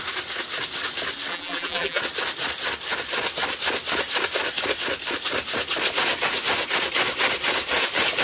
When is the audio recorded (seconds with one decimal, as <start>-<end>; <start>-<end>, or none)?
0.0-1.3; 2.0-8.2